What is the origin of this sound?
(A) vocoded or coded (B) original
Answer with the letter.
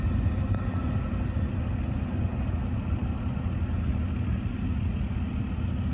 B